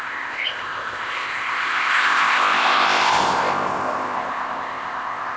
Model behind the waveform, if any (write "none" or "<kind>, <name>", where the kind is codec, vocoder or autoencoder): codec, ZipCodec